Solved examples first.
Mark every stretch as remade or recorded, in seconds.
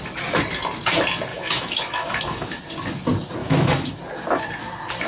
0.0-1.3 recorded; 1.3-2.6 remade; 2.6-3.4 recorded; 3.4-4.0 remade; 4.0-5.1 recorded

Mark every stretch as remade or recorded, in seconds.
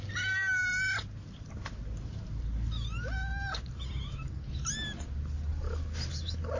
0.0-6.6 recorded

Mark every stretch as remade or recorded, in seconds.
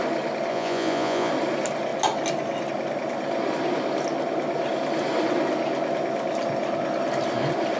0.0-0.5 recorded; 0.5-1.3 remade; 1.3-7.8 recorded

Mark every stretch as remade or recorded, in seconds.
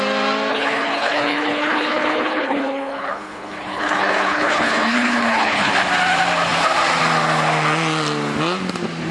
0.0-0.5 recorded; 0.5-5.7 remade; 5.7-9.1 recorded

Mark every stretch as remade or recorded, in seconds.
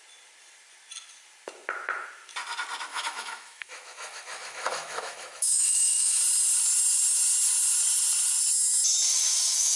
0.0-2.9 recorded; 2.9-6.2 remade; 6.2-9.1 recorded; 9.1-9.8 remade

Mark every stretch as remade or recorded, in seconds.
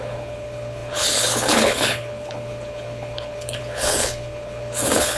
0.0-5.2 remade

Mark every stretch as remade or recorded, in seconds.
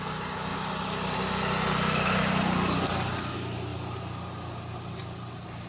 0.0-5.7 recorded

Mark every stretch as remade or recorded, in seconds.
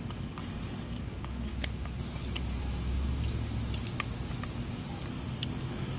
0.0-1.5 remade; 1.5-5.1 recorded; 5.1-6.0 remade